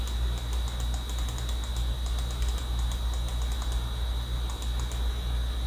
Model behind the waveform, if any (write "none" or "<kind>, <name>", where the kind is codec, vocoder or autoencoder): none